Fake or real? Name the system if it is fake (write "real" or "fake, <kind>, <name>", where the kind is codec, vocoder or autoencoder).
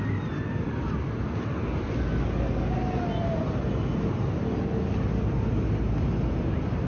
real